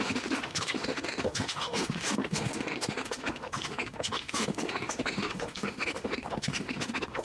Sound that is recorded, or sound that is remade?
remade